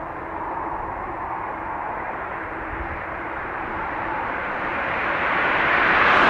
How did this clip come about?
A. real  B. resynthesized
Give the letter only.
B